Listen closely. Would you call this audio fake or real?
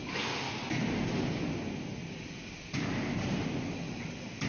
real